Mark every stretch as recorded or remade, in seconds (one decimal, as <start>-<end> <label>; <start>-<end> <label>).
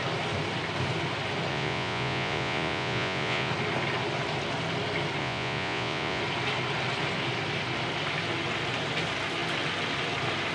0.0-1.5 recorded; 1.5-3.5 remade; 3.5-5.2 recorded; 5.2-6.2 remade; 6.2-10.5 recorded